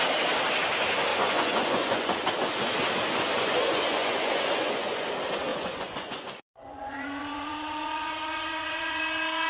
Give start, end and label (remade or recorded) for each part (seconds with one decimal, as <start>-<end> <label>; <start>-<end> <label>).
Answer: 0.0-1.1 recorded; 1.1-2.3 remade; 2.3-3.3 recorded; 3.3-5.1 remade; 5.1-5.5 recorded; 5.5-9.0 remade; 9.0-9.5 recorded